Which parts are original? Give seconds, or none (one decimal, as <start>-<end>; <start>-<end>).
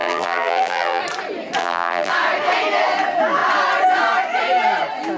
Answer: 1.0-1.6; 2.1-5.2